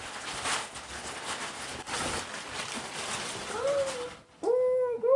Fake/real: real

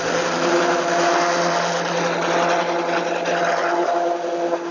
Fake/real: real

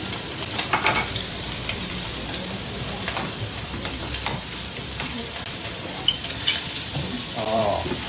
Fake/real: fake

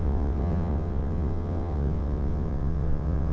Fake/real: fake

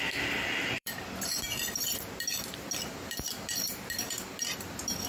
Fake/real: fake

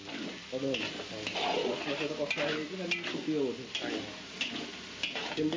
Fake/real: real